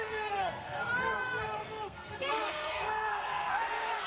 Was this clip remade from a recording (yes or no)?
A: yes